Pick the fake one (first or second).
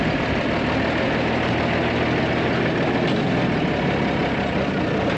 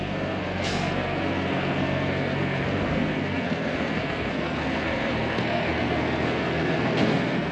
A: second